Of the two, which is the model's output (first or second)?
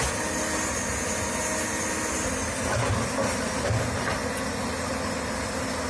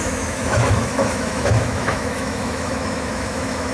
second